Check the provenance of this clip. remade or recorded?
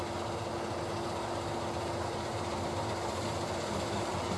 recorded